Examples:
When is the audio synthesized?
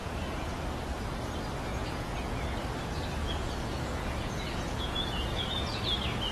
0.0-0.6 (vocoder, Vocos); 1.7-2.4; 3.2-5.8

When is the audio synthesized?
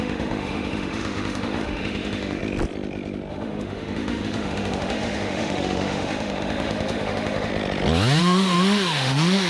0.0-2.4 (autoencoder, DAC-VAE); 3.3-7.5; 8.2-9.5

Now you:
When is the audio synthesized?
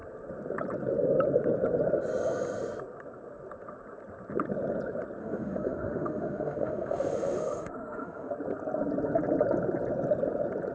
5.2-8.3 (autoencoder, DAC-VAE)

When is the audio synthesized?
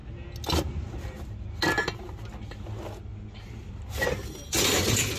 none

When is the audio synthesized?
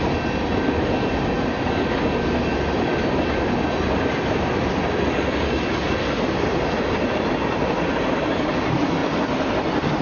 none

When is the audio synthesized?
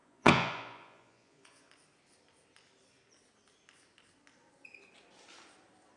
0.0-1.7 (vocoder, Vocos)